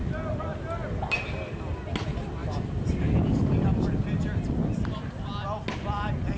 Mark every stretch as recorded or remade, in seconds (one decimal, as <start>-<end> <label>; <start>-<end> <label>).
0.0-6.4 recorded